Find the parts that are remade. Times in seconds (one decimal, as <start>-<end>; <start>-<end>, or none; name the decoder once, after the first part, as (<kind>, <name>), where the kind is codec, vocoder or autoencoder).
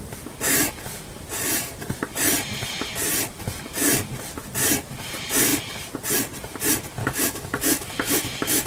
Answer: 7.0-8.7 (autoencoder, DAC-VAE)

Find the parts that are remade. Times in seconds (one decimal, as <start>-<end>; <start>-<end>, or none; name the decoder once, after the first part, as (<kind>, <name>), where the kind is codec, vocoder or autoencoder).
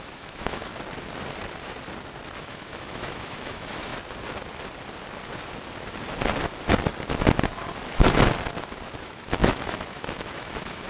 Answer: 0.0-0.7 (autoencoder, DAC-VAE); 2.4-3.9; 9.0-10.9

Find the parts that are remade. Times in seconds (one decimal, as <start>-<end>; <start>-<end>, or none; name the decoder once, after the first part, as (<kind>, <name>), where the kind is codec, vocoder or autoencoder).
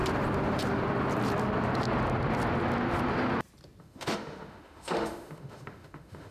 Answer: 3.8-6.3 (autoencoder, DAC-VAE)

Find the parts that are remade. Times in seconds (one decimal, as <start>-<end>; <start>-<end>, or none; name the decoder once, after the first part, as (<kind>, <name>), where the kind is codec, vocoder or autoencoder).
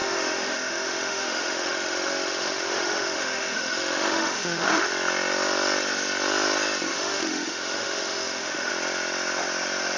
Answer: 0.0-4.9 (autoencoder, DAC-VAE); 6.9-8.7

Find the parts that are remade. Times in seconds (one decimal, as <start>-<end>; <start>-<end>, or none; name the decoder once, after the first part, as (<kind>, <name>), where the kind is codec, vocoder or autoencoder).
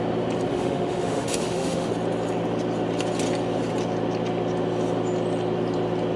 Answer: 0.5-1.9 (autoencoder, DAC-VAE)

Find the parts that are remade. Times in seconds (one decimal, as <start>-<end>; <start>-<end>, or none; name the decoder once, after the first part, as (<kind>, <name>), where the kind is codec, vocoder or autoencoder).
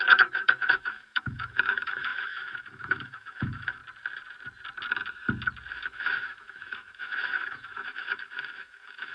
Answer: 0.0-3.8 (autoencoder, DAC-VAE); 5.7-9.1